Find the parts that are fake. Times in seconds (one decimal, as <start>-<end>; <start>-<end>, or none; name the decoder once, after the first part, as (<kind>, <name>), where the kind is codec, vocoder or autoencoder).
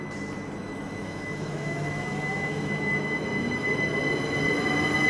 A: 0.6-3.7 (autoencoder, DAC-VAE)